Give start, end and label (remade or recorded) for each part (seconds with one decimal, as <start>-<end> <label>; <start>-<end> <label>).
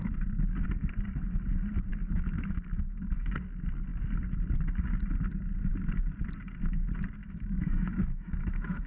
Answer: 0.0-1.9 recorded; 1.9-3.3 remade; 3.3-7.2 recorded; 7.2-8.9 remade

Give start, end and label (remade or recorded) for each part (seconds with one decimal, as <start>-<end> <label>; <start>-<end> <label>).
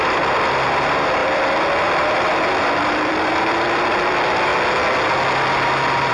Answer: 0.0-4.5 remade; 4.5-6.1 recorded